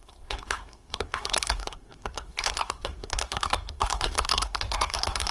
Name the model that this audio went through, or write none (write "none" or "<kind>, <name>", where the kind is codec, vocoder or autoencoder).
codec, SNAC